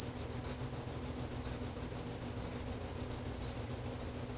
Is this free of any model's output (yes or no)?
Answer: yes